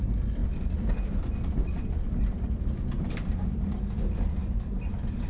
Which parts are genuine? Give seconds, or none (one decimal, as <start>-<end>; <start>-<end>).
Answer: 0.0-5.3